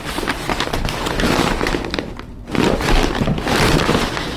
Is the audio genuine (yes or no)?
yes